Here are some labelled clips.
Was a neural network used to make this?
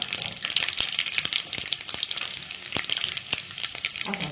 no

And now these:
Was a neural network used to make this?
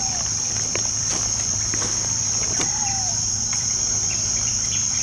yes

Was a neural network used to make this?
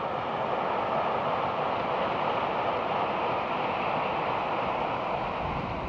no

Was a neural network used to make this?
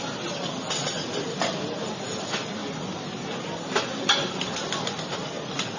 no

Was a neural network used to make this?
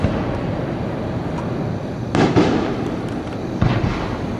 no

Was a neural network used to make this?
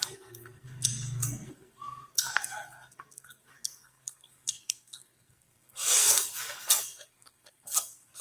yes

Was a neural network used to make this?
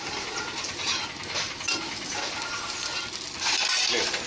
no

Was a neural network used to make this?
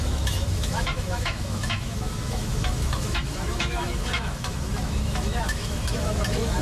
yes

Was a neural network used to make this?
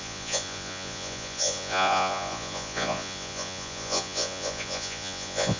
yes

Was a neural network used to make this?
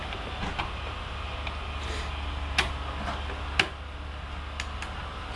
no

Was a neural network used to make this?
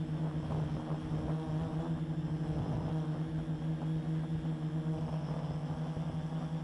no